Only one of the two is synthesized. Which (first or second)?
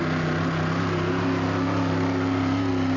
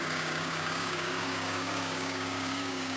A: second